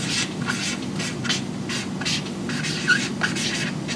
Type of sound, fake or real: real